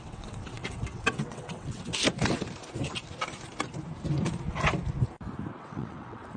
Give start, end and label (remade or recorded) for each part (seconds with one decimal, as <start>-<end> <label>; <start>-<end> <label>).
0.0-1.9 remade; 1.9-5.5 recorded; 5.5-6.4 remade